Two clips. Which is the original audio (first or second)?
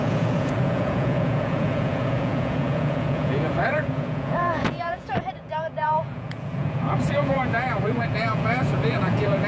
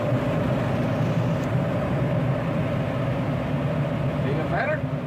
second